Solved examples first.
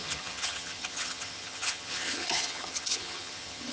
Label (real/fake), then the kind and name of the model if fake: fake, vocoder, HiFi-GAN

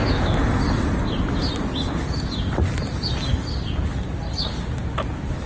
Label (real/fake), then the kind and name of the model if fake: real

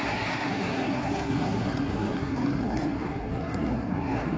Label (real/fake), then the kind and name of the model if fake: fake, codec, SNAC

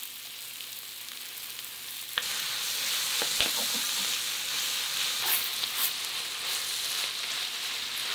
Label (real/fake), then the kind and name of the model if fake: real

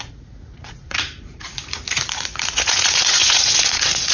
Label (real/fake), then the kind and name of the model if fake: fake, vocoder, Vocos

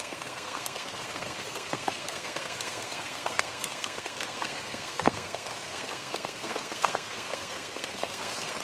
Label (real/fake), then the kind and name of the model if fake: fake, codec, SNAC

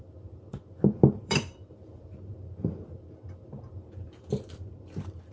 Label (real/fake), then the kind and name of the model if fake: fake, vocoder, BigVGAN v2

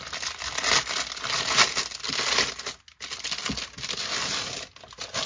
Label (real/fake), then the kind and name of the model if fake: real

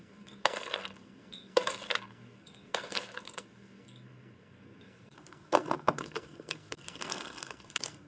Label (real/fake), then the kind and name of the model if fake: fake, codec, SNAC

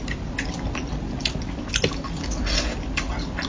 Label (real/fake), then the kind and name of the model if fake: real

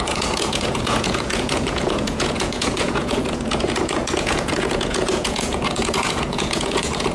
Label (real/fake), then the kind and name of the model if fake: fake, vocoder, Vocos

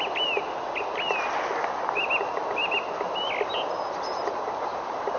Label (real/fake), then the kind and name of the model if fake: real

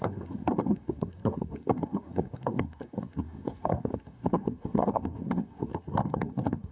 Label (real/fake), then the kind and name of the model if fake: fake, codec, SNAC